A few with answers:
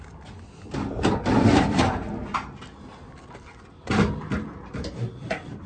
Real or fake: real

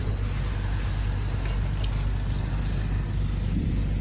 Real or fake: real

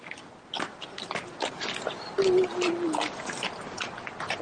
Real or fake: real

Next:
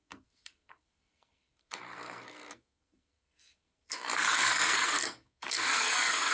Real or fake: fake